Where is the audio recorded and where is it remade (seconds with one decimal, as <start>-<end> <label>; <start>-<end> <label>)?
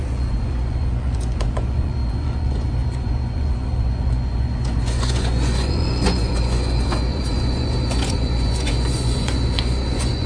0.0-10.3 remade